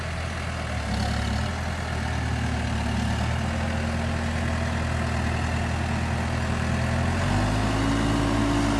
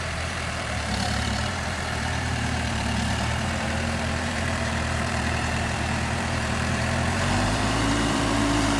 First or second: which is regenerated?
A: second